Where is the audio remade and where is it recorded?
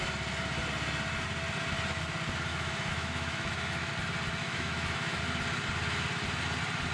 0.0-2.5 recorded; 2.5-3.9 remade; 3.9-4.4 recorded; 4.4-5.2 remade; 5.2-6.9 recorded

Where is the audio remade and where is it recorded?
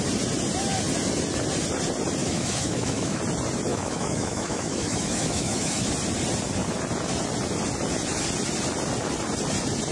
0.0-2.2 recorded; 2.2-3.2 remade; 3.2-3.7 recorded; 3.7-5.9 remade; 5.9-9.9 recorded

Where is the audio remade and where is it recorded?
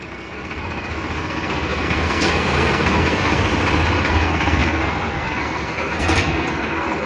0.0-3.5 remade; 3.5-4.1 recorded; 4.1-7.1 remade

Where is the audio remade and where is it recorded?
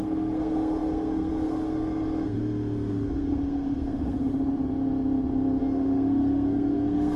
0.0-2.4 remade; 2.4-2.9 recorded; 2.9-4.3 remade; 4.3-5.6 recorded; 5.6-7.2 remade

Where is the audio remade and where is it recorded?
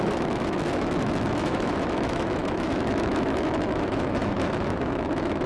0.0-5.5 remade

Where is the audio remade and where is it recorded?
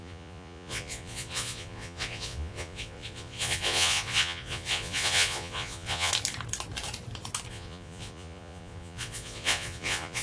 0.0-6.1 remade; 6.1-7.5 recorded; 7.5-10.2 remade